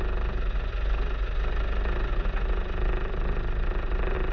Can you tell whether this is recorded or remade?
recorded